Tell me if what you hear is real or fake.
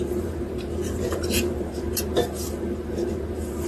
fake